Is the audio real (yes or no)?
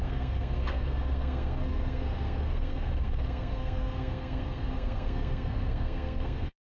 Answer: no